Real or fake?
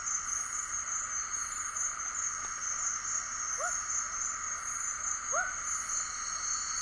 real